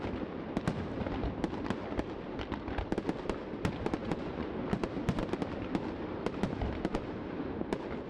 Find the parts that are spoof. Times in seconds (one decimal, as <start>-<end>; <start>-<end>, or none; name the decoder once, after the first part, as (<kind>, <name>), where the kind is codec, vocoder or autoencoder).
4.0-4.5 (vocoder, Vocos)